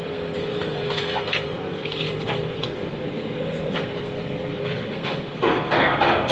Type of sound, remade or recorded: remade